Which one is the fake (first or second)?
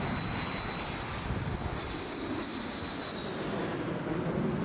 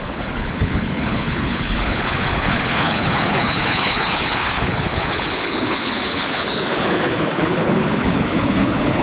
second